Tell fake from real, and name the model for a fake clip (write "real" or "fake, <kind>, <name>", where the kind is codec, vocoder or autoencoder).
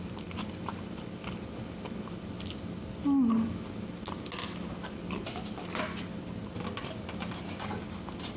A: real